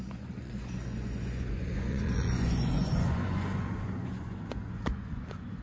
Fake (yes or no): yes